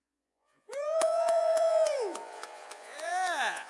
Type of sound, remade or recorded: remade